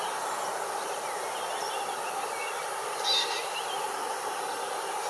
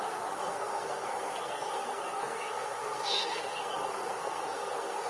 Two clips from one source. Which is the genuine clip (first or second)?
first